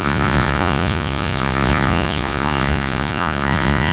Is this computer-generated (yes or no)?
yes